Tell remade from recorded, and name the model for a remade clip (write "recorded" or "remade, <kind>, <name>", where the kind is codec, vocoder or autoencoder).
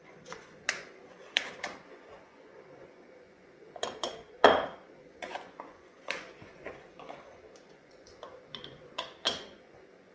remade, vocoder, Vocos